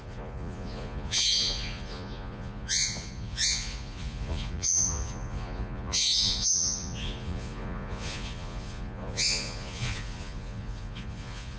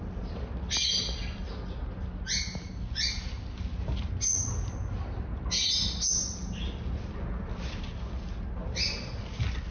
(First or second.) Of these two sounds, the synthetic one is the first